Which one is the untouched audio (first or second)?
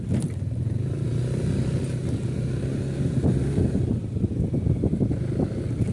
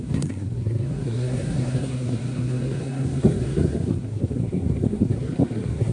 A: first